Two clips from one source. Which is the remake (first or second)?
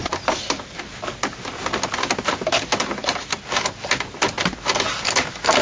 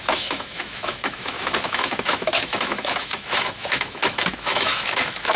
second